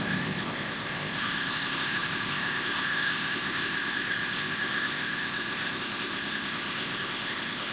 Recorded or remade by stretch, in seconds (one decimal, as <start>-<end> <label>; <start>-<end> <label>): 0.0-7.7 remade